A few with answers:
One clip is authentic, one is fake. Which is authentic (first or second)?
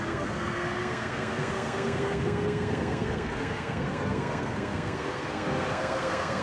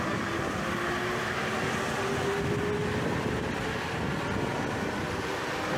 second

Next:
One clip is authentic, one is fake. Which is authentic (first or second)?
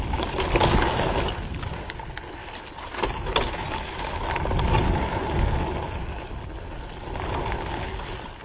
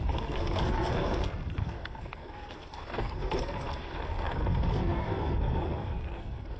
first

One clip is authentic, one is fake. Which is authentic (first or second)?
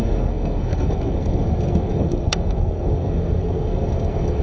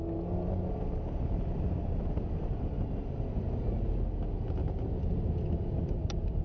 second